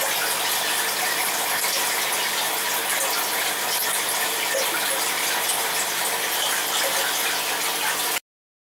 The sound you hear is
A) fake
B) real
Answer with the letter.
B